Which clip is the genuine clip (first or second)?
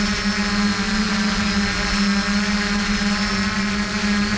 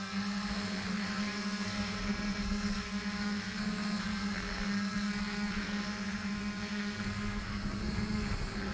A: first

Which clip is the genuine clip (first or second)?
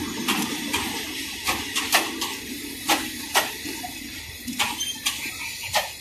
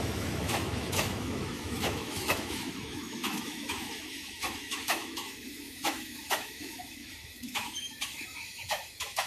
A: first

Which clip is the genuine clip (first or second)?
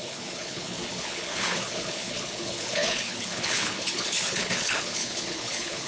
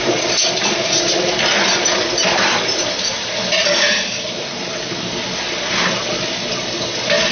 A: second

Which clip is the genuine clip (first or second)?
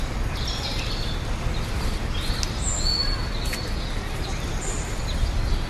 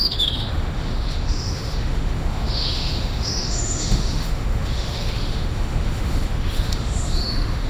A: first